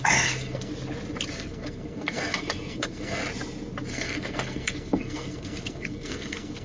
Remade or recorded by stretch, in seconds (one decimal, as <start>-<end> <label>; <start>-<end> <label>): 0.0-0.7 remade; 0.7-1.3 recorded; 1.3-3.2 remade; 3.2-3.9 recorded; 3.9-6.6 remade